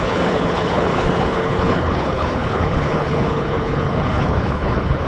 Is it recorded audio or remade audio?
remade